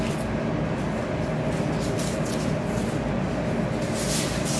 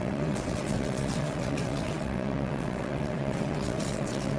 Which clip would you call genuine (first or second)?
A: first